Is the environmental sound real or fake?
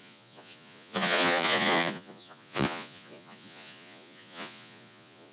fake